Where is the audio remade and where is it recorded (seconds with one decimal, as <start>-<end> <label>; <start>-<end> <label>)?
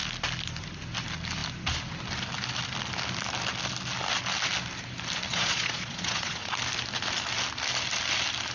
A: 0.0-5.3 recorded; 5.3-6.5 remade; 6.5-8.5 recorded